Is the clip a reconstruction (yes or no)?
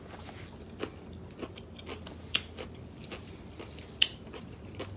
no